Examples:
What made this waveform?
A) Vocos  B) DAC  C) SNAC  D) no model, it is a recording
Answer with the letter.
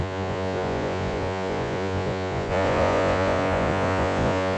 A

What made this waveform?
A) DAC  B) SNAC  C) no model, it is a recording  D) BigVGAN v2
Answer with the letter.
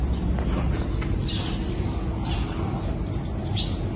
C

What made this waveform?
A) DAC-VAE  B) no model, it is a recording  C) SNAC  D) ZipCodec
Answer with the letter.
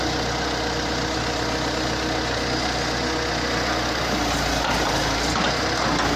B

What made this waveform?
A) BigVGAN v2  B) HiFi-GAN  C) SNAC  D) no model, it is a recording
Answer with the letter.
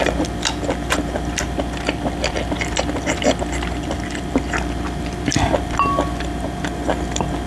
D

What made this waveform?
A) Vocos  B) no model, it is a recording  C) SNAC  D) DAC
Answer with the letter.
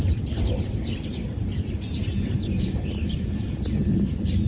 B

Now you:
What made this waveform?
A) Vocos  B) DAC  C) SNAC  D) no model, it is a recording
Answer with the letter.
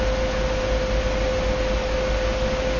D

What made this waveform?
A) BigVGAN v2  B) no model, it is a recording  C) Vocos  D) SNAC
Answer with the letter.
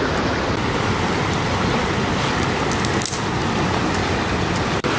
B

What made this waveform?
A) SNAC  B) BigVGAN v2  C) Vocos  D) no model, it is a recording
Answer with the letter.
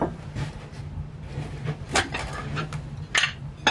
D